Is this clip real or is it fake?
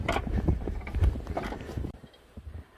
fake